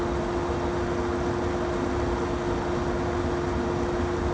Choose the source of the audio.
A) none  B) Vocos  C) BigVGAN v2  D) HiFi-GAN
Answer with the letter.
A